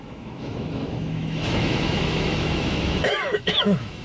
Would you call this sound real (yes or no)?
no